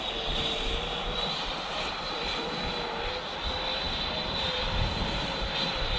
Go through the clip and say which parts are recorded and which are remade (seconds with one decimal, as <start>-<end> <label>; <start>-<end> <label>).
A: 0.0-6.0 recorded